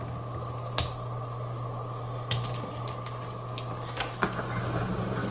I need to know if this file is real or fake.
real